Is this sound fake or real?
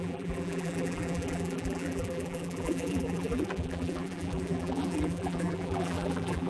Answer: fake